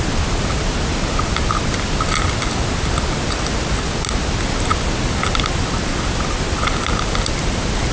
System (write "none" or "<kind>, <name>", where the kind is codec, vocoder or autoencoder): none